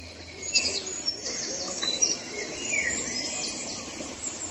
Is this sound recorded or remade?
recorded